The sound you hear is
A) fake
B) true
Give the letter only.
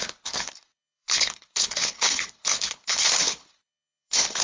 A